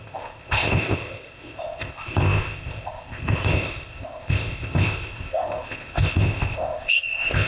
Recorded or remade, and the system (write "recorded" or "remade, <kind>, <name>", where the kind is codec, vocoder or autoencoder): remade, codec, ZipCodec